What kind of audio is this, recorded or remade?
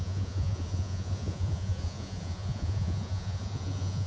remade